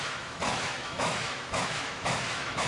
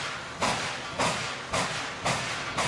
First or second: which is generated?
first